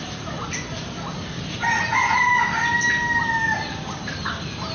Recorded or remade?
recorded